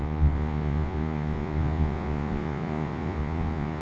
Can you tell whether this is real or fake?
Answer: fake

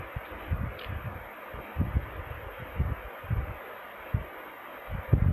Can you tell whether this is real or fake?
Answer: real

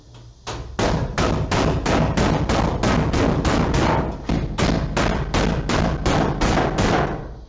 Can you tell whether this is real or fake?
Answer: real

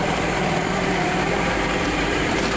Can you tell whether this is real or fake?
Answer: fake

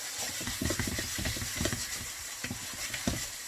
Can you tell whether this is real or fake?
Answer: fake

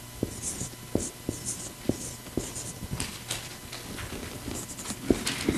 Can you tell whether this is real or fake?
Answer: real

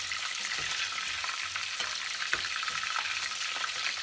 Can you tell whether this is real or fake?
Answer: real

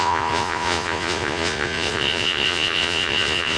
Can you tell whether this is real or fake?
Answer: fake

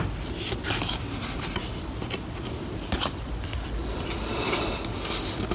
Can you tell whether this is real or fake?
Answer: real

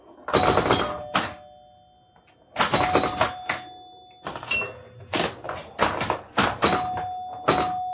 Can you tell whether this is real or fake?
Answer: real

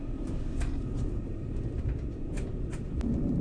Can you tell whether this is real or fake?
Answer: real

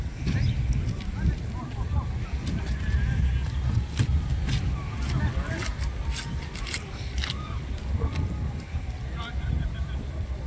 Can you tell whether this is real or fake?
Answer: real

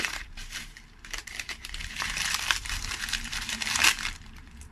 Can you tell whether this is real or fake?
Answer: fake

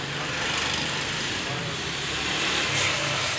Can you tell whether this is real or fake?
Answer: real